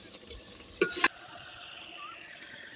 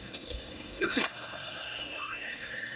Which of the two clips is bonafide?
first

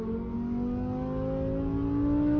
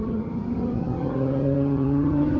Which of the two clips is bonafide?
first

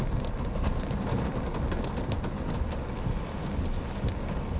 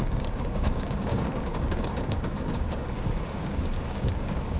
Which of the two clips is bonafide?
first